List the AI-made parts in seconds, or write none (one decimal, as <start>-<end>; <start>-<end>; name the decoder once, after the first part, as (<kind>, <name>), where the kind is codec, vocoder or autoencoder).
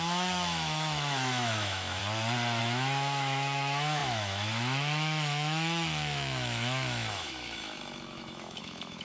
0.0-2.0 (autoencoder, DAC-VAE); 2.6-9.0